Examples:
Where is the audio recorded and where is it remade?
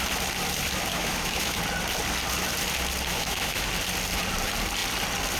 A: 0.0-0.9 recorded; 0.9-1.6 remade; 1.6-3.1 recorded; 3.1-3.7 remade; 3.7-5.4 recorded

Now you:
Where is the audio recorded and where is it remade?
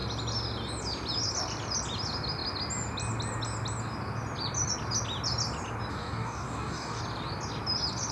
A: 0.0-5.9 recorded; 5.9-7.0 remade; 7.0-8.1 recorded